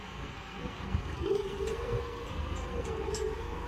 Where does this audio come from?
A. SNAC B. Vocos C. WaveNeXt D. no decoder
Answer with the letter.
A